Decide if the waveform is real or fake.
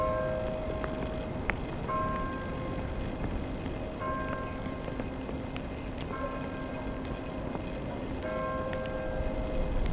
real